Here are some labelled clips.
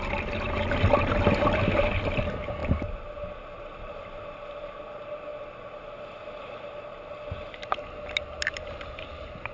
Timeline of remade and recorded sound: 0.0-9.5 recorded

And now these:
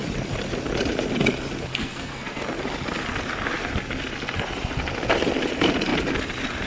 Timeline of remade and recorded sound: 0.0-1.7 recorded; 1.7-2.4 remade; 2.4-6.7 recorded

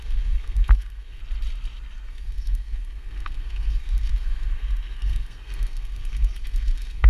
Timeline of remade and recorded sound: 0.0-1.2 remade; 1.2-2.1 recorded; 2.1-7.1 remade